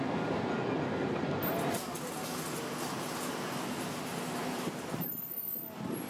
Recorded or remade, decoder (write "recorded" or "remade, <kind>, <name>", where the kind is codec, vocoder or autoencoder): recorded